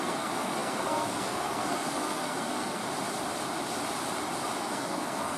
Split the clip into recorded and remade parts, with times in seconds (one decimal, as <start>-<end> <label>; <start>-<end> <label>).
0.0-2.8 remade; 2.8-4.6 recorded; 4.6-5.4 remade